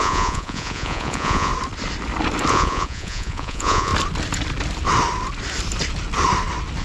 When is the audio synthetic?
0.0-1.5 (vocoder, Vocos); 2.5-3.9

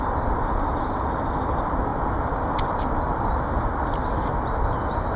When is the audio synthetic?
none

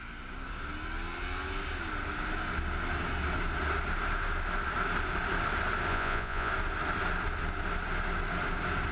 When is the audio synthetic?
5.9-6.5 (vocoder, Vocos)

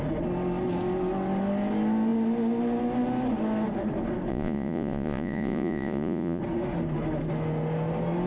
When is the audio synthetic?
4.3-6.4 (vocoder, Vocos)